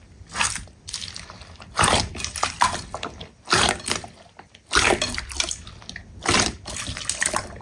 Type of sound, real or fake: real